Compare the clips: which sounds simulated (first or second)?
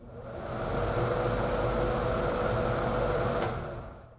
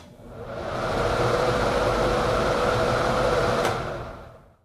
second